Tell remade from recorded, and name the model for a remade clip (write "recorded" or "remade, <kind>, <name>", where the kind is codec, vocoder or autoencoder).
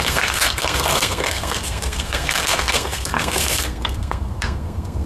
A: remade, codec, SNAC